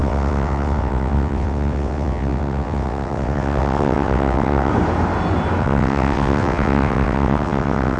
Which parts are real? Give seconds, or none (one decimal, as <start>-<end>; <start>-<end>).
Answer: 4.7-5.6